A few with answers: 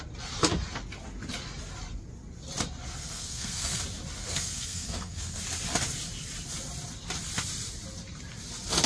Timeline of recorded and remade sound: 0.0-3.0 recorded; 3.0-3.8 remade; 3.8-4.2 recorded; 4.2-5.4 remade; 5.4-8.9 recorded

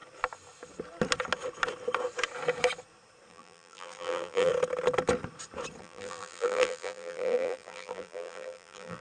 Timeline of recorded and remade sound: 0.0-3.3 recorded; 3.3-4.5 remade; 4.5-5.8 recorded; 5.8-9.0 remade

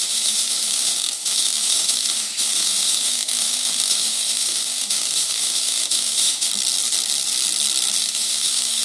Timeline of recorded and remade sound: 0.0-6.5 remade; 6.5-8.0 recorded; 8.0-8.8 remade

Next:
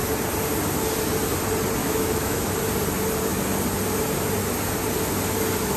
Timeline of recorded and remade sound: 0.0-1.8 recorded; 1.8-2.5 remade; 2.5-5.8 recorded

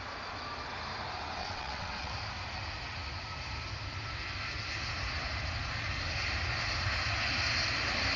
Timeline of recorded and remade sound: 0.0-1.4 recorded; 1.4-2.1 remade; 2.1-8.2 recorded

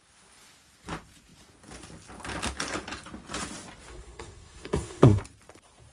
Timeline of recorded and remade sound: 0.0-3.9 recorded; 3.9-5.2 remade; 5.2-5.9 recorded